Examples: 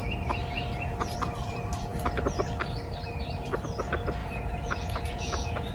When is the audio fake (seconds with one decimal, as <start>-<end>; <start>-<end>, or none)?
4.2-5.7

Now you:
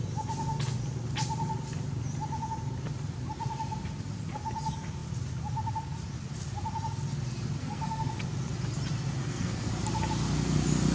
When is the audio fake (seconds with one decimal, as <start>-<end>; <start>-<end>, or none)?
7.6-8.1; 9.2-9.7

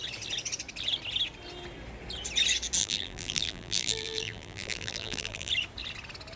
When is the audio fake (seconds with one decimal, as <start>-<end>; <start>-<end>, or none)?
2.8-5.5